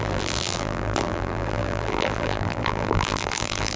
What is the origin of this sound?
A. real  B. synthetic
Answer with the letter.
B